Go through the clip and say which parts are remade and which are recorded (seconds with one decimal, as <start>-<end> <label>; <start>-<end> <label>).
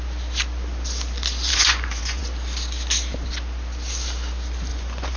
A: 0.0-1.5 recorded; 1.5-2.2 remade; 2.2-4.7 recorded; 4.7-5.2 remade